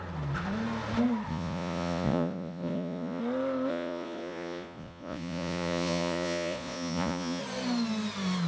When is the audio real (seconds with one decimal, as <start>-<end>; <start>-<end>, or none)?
0.0-1.3; 3.2-3.7; 7.4-8.5